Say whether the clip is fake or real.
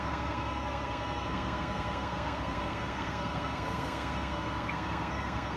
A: fake